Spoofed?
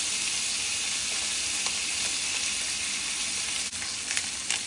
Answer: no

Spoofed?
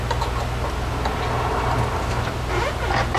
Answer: no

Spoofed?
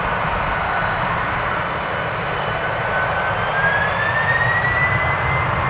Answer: no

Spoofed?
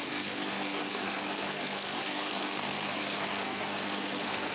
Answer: yes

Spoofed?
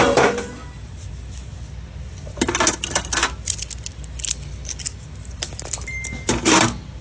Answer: no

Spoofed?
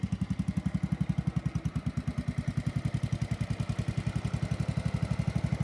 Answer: no